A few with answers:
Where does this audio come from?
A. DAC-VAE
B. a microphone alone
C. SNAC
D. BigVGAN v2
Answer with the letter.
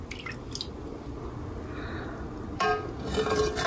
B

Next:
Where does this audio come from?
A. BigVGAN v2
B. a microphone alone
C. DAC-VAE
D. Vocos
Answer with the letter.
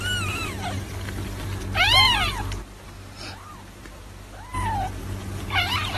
B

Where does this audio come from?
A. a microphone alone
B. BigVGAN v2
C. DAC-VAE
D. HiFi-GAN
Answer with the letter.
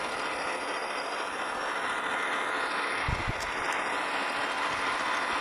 A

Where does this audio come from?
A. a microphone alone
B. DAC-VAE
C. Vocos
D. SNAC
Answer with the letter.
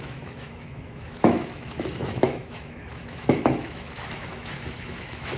B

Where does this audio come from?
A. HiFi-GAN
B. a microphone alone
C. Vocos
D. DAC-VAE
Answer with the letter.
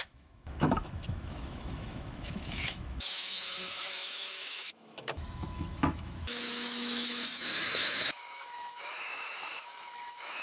D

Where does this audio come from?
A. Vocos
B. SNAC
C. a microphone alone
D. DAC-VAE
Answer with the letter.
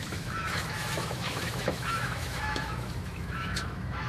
D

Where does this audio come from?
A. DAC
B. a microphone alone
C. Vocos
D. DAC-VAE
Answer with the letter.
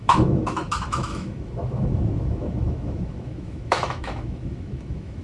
D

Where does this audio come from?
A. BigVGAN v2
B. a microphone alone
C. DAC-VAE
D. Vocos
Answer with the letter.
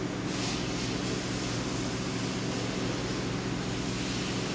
B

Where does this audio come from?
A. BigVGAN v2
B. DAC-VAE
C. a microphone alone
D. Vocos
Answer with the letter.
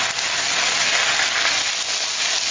C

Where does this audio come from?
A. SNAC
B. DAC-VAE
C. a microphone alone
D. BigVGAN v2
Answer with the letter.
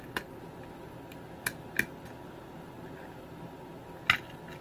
C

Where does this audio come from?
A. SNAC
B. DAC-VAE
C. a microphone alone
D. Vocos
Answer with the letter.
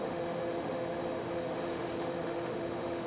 B